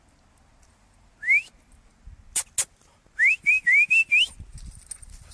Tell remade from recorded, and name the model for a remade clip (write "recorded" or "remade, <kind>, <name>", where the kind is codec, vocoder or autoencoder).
recorded